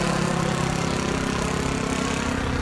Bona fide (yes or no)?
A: yes